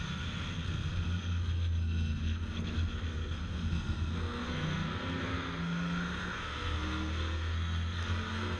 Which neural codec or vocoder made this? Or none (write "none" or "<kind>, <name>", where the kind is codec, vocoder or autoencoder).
codec, SNAC